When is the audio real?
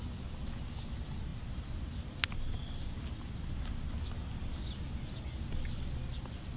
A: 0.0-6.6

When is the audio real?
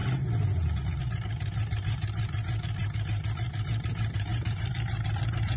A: 0.0-1.0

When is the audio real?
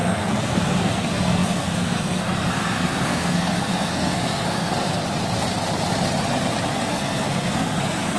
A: 5.0-6.9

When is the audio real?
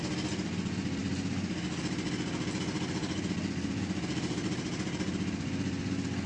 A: 0.0-6.3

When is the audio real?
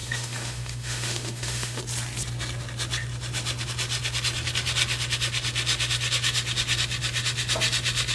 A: 1.8-8.1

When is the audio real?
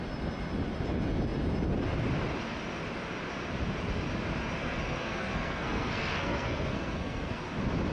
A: 0.0-4.6; 7.4-7.9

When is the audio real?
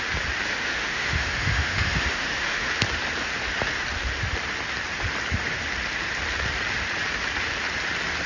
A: 0.0-0.5; 2.7-8.3